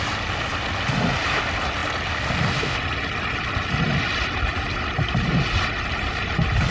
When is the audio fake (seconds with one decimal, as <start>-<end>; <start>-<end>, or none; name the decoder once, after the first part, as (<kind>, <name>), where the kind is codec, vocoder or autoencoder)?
none